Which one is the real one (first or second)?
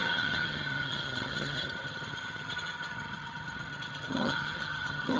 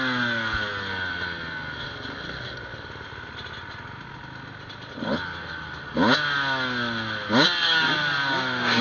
second